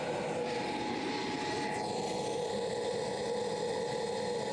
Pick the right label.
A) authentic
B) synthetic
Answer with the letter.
A